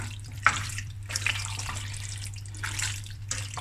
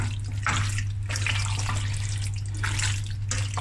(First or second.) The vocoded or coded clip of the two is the first